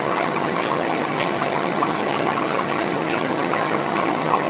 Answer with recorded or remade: remade